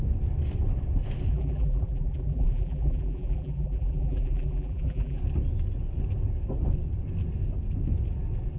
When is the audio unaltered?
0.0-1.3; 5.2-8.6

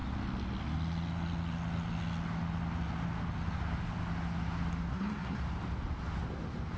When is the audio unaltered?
0.0-4.9; 5.4-6.8